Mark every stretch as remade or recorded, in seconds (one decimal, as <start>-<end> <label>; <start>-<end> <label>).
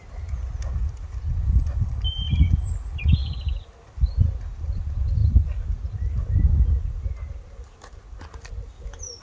0.0-9.2 recorded